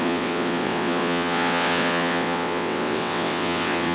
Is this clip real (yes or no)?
no